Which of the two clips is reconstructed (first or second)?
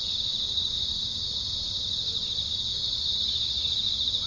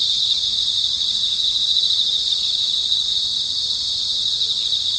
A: second